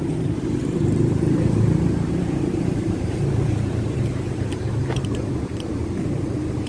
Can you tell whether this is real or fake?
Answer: fake